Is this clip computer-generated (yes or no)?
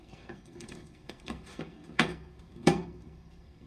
yes